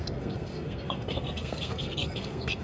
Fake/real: fake